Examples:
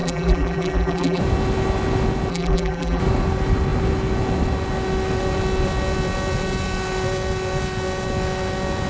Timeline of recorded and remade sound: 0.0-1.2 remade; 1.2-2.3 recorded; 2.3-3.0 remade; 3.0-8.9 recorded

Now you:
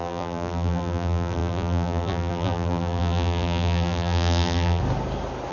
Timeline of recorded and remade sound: 0.0-4.8 remade; 4.8-5.5 recorded

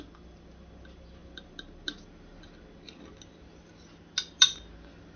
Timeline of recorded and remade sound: 0.0-5.2 recorded

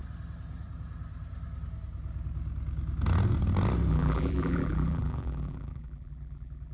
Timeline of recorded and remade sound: 0.0-3.9 recorded; 3.9-6.7 remade

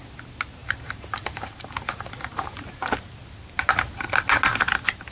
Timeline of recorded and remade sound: 0.0-0.6 recorded; 0.6-2.7 remade; 2.7-5.1 recorded

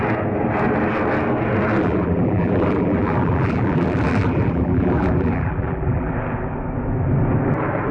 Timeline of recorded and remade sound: 0.0-1.8 recorded; 1.8-6.1 remade; 6.1-7.9 recorded